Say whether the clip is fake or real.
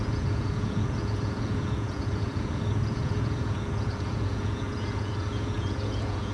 fake